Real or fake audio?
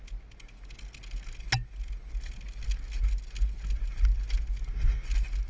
real